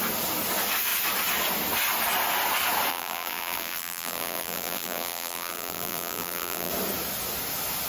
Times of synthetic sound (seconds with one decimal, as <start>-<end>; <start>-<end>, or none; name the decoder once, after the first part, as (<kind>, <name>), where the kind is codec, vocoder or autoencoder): 2.9-6.7 (vocoder, BigVGAN v2)